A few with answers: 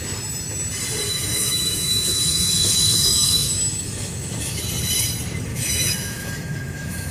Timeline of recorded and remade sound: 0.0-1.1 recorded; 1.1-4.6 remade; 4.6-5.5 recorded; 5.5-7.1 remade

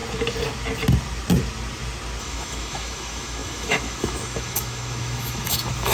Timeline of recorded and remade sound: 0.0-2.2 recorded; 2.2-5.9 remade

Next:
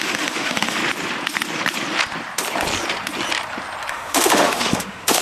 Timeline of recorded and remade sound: 0.0-0.8 remade; 0.8-3.9 recorded; 3.9-5.2 remade

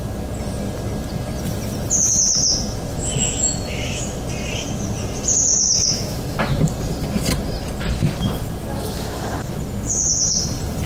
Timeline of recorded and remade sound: 0.0-2.9 recorded; 2.9-4.0 remade; 4.0-5.5 recorded; 5.5-6.7 remade; 6.7-8.7 recorded; 8.7-9.5 remade; 9.5-10.9 recorded

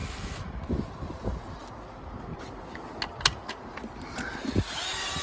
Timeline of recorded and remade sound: 0.0-0.6 remade; 0.6-5.2 recorded

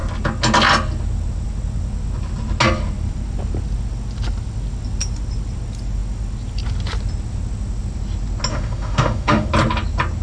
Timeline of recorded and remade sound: 0.0-8.5 recorded; 8.5-9.5 remade; 9.5-10.2 recorded